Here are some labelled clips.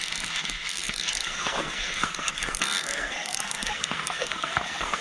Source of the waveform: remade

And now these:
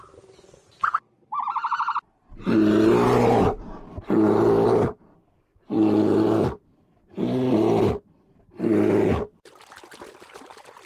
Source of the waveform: recorded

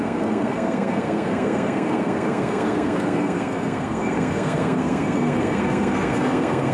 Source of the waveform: remade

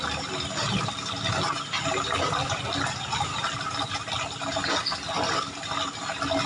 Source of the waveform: recorded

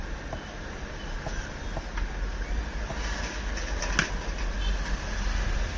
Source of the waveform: recorded